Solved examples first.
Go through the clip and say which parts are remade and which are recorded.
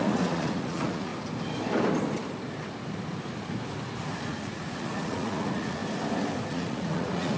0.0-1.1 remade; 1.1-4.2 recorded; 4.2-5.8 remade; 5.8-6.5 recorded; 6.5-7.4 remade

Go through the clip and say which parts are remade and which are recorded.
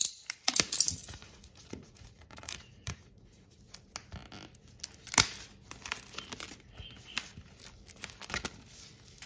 0.0-1.0 recorded; 1.0-3.6 remade; 3.6-9.3 recorded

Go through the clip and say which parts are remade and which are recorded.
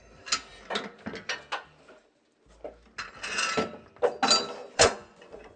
0.0-4.6 recorded; 4.6-5.6 remade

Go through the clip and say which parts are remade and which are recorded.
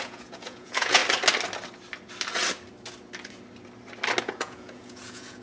0.0-1.0 remade; 1.0-4.2 recorded; 4.2-5.4 remade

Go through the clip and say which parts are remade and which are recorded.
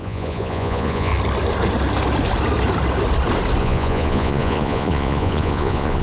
0.0-1.1 remade; 1.1-3.6 recorded; 3.6-6.0 remade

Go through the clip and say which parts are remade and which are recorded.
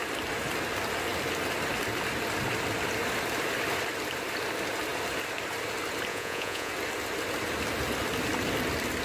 0.0-6.1 recorded; 6.1-6.7 remade; 6.7-9.0 recorded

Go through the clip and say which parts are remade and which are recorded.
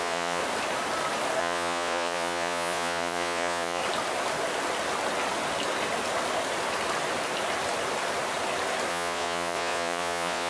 0.0-0.4 remade; 0.4-1.4 recorded; 1.4-3.8 remade; 3.8-8.9 recorded; 8.9-10.5 remade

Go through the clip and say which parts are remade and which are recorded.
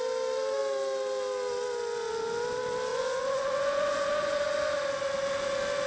0.0-2.9 recorded; 2.9-4.4 remade; 4.4-5.9 recorded